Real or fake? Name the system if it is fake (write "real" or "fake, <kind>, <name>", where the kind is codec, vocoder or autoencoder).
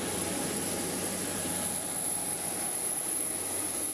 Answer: real